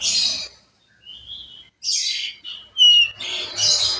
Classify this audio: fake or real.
real